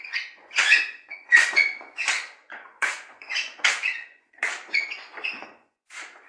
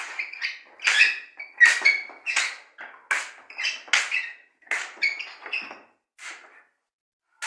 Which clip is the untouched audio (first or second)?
second